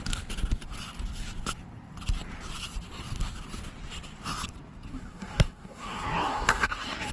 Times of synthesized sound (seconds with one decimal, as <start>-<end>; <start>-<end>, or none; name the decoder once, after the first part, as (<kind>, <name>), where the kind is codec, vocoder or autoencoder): 4.9-7.1 (codec, SNAC)